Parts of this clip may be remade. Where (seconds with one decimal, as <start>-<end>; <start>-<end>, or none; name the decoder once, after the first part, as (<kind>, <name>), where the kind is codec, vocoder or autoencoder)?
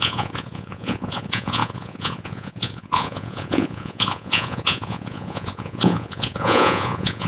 0.0-7.3 (vocoder, Vocos)